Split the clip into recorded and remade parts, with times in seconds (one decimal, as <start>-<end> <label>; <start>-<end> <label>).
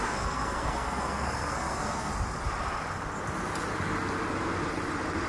0.0-2.1 remade; 2.1-5.3 recorded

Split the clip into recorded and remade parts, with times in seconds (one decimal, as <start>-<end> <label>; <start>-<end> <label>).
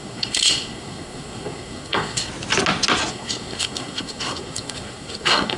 0.0-2.3 remade; 2.3-3.1 recorded; 3.1-5.6 remade